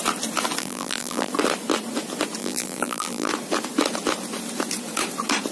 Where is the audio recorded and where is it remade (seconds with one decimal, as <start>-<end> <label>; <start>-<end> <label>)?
0.0-0.6 recorded; 0.6-1.3 remade; 1.3-2.4 recorded; 2.4-3.3 remade; 3.3-5.5 recorded